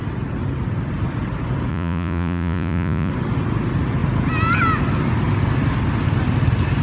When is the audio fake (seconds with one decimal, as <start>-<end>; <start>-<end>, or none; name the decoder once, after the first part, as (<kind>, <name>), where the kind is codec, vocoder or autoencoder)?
1.7-3.1 (vocoder, Vocos)